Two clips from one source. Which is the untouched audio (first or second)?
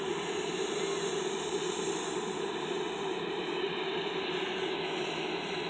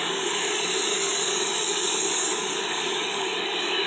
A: first